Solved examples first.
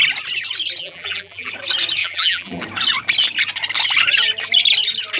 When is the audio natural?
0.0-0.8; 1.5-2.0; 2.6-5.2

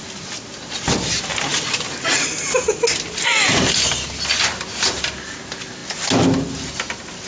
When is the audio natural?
0.0-7.3

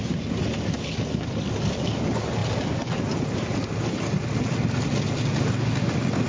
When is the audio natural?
0.0-6.3

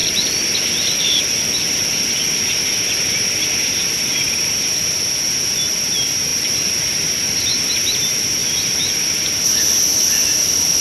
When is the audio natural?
2.0-6.3; 7.1-8.4; 9.1-10.8